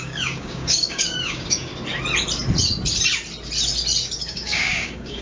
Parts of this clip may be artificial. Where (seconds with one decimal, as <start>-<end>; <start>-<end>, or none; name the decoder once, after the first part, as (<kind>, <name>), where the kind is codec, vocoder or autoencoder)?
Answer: 0.0-1.7 (codec, DAC); 4.0-5.2